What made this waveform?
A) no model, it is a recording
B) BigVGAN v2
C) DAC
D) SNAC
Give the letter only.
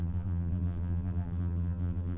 B